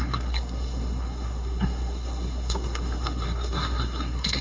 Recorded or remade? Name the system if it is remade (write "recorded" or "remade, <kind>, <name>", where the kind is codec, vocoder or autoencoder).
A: remade, codec, SNAC